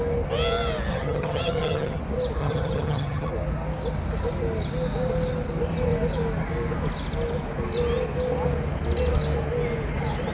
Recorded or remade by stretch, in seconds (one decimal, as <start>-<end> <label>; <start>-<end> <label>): 0.0-0.9 recorded; 0.9-2.0 remade; 2.0-2.4 recorded; 2.4-3.3 remade; 3.3-10.3 recorded